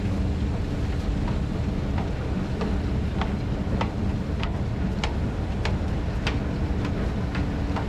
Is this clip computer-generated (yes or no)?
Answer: no